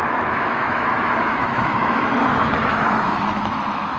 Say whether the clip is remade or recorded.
remade